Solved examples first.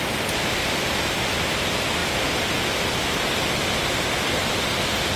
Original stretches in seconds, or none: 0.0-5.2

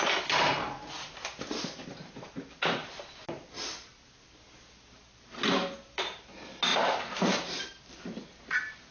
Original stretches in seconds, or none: 0.0-8.9

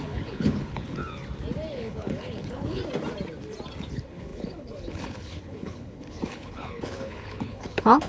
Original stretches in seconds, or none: 1.0-1.7; 2.8-3.9

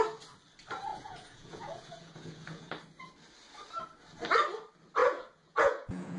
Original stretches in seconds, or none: 0.0-0.9; 2.7-5.0